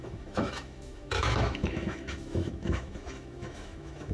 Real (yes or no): no